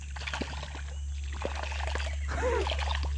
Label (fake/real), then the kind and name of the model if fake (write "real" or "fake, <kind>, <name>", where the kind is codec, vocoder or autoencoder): real